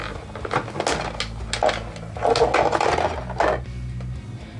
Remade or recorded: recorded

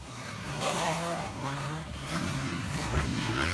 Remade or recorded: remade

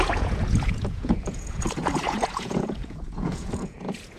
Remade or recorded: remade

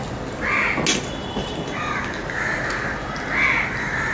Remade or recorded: recorded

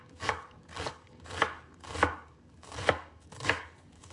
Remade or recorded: remade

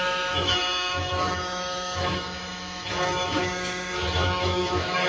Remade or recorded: remade